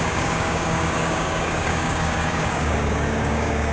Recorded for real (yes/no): no